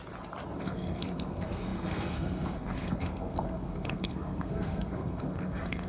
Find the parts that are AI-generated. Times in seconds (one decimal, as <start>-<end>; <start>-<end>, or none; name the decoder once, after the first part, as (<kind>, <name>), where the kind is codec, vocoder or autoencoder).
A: 0.6-5.9 (codec, SNAC)